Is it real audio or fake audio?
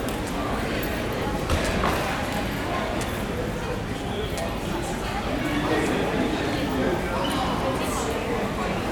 fake